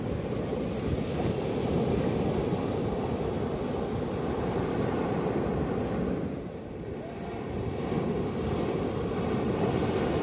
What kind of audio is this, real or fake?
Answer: real